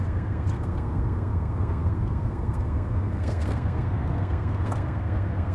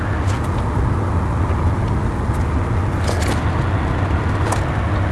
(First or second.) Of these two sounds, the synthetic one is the first